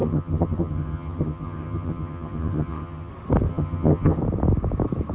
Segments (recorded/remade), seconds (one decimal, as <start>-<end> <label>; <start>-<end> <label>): 0.0-3.1 remade; 3.1-3.5 recorded; 3.5-4.2 remade; 4.2-5.1 recorded